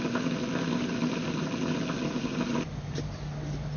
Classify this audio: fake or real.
real